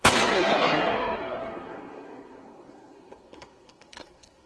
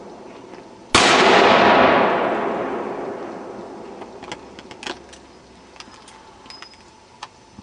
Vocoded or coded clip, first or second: first